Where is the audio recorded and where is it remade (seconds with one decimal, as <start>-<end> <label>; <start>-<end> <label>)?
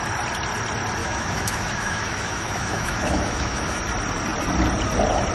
0.0-1.0 recorded; 1.0-3.8 remade; 3.8-5.3 recorded